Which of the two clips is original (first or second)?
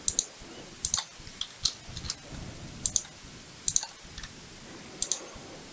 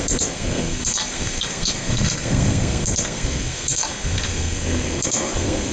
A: first